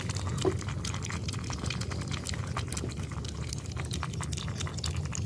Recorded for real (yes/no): yes